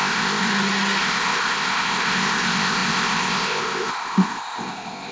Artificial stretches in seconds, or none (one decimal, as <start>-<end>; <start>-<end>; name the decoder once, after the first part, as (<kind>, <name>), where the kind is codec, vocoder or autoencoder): 0.0-0.5 (codec, ZipCodec); 1.0-5.1